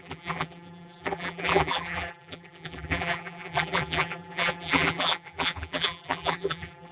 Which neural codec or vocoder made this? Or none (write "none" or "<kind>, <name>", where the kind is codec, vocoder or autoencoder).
vocoder, BigVGAN v2